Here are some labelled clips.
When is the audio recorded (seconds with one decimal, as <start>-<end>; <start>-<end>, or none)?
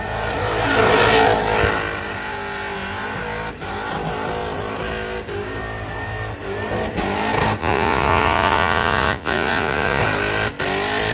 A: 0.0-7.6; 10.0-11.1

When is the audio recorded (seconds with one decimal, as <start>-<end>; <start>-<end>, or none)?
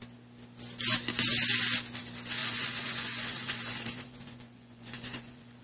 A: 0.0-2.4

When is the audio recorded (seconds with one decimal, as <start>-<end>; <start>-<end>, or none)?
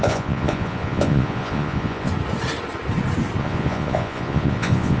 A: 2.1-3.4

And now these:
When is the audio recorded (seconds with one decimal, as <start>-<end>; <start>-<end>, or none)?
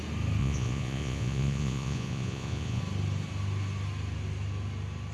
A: 0.0-0.4; 2.8-5.1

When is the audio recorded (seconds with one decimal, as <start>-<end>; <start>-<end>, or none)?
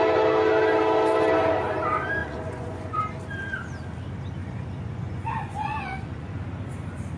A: 0.0-2.2; 3.1-4.4; 6.4-7.2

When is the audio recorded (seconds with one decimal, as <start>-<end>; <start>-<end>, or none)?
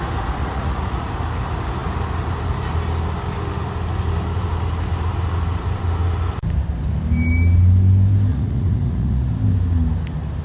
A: 0.0-0.4; 1.1-8.3; 9.3-10.4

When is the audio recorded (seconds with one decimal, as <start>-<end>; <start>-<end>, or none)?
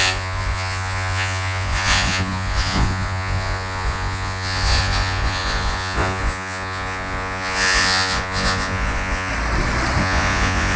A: 9.3-10.0